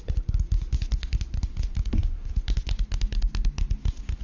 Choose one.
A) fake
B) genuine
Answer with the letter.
B